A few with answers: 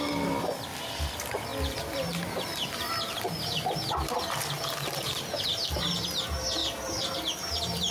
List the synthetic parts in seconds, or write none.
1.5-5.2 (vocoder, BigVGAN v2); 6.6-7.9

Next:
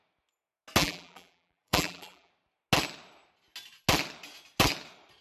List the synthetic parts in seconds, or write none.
0.8-2.3 (vocoder, BigVGAN v2)

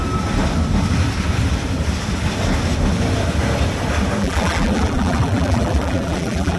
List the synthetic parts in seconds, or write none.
4.2-6.6 (vocoder, BigVGAN v2)